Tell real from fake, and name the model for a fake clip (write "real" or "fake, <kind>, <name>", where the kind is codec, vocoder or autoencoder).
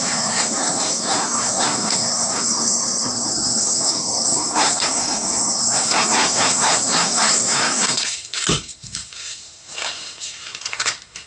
fake, codec, SNAC